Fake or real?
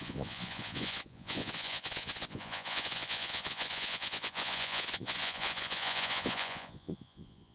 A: fake